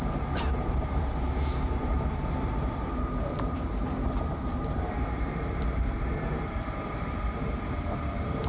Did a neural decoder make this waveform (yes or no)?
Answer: yes